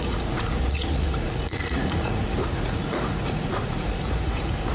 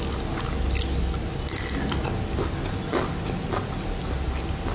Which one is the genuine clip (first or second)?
second